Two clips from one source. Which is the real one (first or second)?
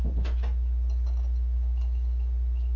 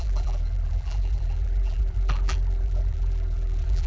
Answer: first